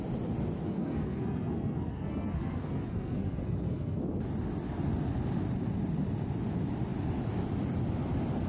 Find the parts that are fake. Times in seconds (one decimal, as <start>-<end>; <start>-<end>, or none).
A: 0.6-4.0